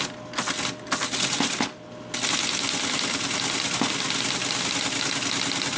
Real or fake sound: real